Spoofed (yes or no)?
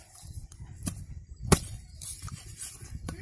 yes